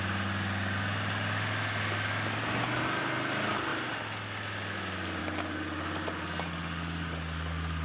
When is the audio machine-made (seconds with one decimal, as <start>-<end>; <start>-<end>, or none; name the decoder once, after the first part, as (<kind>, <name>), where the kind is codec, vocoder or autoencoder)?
none